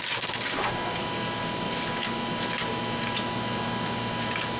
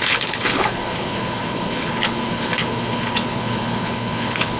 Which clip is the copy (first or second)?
second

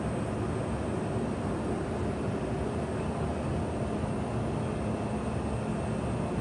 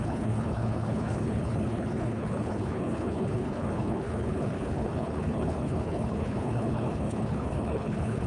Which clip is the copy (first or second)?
second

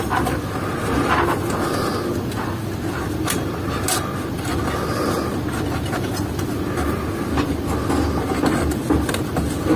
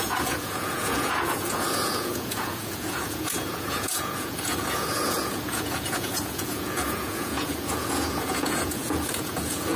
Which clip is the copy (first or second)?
second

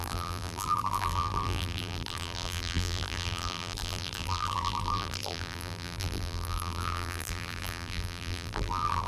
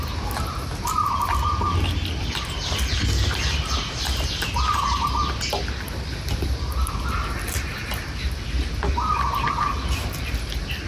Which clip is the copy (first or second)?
first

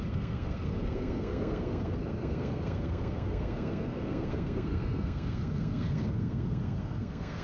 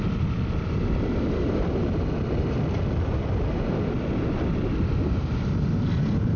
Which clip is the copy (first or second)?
first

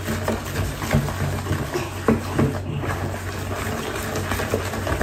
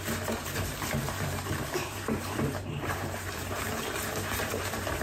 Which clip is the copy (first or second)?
second